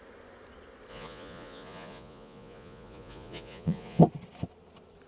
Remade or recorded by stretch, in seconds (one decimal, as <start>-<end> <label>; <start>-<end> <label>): 0.0-0.9 recorded; 0.9-4.0 remade; 4.0-5.1 recorded